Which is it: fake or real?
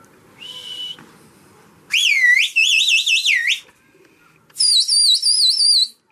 real